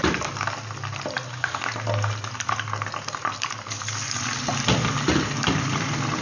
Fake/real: real